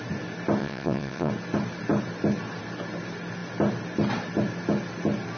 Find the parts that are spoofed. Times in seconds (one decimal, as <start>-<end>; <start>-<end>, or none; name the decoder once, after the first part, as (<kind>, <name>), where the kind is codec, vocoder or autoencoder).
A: 0.6-1.3 (vocoder, WaveNeXt)